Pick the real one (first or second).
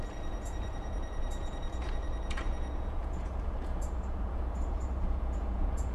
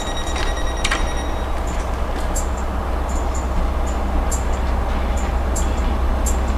second